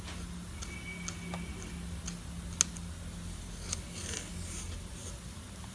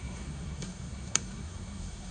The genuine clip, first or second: first